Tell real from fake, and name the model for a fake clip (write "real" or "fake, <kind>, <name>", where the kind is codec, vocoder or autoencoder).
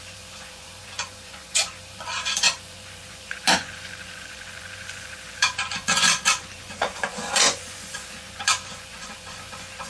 fake, vocoder, Vocos